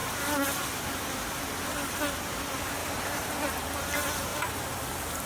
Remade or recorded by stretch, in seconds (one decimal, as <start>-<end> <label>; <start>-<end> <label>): 0.0-2.8 recorded; 2.8-3.3 remade; 3.3-5.3 recorded